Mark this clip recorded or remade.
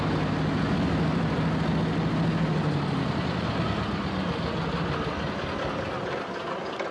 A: recorded